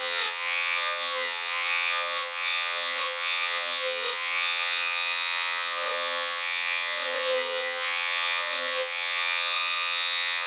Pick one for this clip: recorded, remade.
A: remade